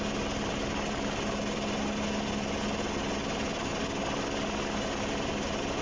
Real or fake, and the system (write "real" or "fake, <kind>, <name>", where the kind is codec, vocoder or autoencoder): real